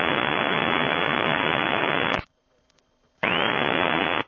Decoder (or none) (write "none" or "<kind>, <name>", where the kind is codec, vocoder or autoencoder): vocoder, Vocos